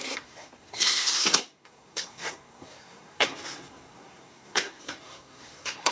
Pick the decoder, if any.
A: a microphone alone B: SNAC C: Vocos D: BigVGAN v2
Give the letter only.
B